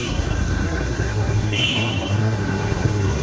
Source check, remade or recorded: remade